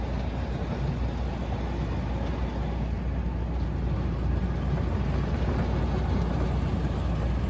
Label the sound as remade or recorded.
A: recorded